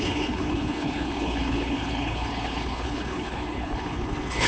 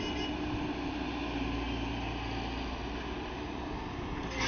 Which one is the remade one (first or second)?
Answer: first